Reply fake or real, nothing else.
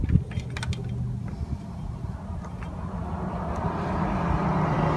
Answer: real